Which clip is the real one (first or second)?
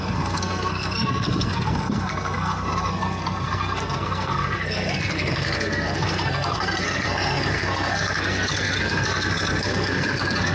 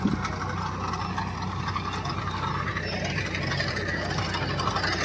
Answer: second